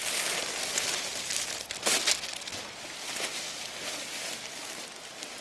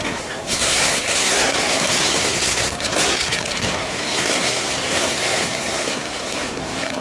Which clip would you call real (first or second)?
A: first